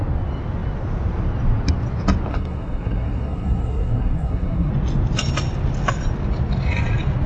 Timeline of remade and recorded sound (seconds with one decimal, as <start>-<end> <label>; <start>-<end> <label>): 0.0-2.3 recorded; 2.3-4.7 remade; 4.7-7.3 recorded